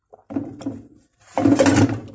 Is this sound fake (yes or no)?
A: no